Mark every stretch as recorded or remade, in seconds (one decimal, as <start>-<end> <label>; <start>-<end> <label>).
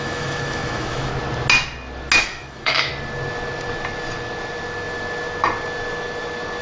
0.0-1.1 remade; 1.1-2.2 recorded; 2.2-2.9 remade; 2.9-6.6 recorded